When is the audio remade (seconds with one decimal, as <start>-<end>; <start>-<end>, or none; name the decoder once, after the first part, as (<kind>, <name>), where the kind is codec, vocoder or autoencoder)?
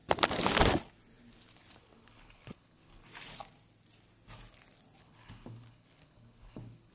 1.8-3.0 (codec, HILCodec); 5.0-6.9